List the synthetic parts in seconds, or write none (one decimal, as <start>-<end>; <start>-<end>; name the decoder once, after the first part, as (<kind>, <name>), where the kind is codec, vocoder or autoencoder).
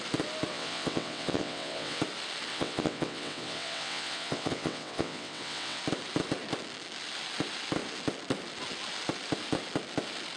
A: 0.5-2.0 (vocoder, WaveNeXt); 2.5-5.8